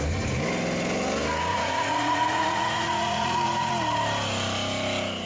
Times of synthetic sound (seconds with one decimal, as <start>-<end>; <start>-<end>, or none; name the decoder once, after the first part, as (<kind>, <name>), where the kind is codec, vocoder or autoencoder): 1.5-3.7 (vocoder, Vocos)